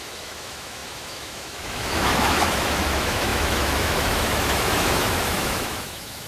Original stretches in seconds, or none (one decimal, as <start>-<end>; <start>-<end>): none